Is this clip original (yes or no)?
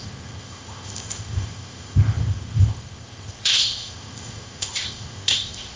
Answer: no